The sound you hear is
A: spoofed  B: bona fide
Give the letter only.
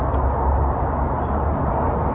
B